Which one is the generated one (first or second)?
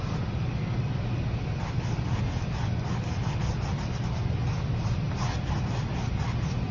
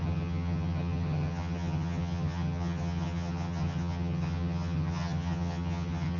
second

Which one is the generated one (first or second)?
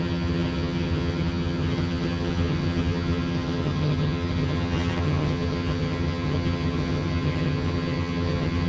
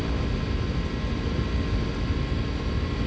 first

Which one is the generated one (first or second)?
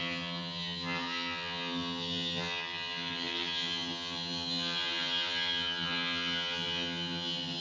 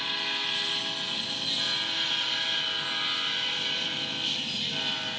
first